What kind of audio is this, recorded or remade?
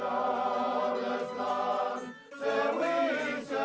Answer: recorded